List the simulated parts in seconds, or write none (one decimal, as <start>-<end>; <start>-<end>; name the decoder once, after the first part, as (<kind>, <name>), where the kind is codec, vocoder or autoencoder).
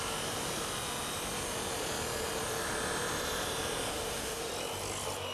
3.9-4.5 (autoencoder, DAC-VAE)